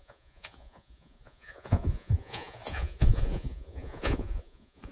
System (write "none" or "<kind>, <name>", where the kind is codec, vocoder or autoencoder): vocoder, Vocos